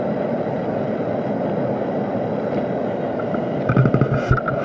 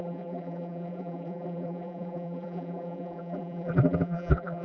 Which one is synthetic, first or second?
second